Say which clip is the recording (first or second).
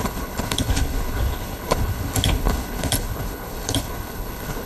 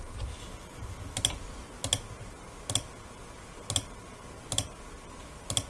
second